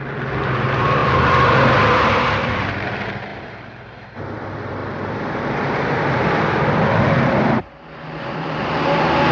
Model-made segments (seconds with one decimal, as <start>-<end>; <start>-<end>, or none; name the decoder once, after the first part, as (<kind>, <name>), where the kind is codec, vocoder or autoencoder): 0.0-9.3 (vocoder, BigVGAN v2)